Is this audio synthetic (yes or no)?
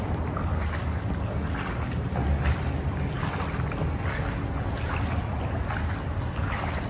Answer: no